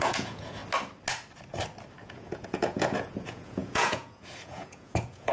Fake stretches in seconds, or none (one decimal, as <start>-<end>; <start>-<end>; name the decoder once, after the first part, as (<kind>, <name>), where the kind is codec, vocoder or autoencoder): 0.0-0.6 (vocoder, Vocos); 2.0-5.3